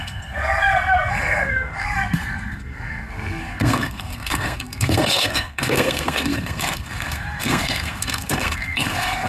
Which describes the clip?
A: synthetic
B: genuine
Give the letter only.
A